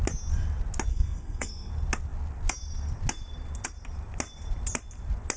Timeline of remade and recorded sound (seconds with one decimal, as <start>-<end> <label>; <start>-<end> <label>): 0.0-0.9 recorded; 0.9-1.7 remade; 1.7-5.4 recorded